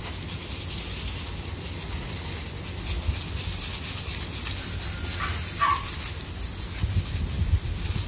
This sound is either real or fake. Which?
real